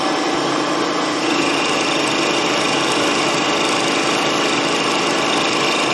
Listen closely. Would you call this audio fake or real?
fake